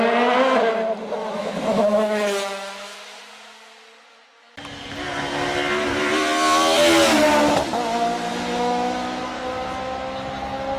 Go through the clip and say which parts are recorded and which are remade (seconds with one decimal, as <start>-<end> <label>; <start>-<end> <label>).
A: 0.0-1.2 recorded; 1.2-3.2 remade; 3.2-8.3 recorded; 8.3-9.2 remade; 9.2-10.8 recorded